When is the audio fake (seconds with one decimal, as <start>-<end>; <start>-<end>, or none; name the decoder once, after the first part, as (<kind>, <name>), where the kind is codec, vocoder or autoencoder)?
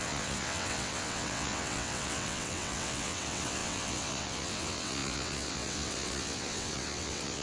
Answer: 0.0-7.4 (vocoder, WaveNeXt)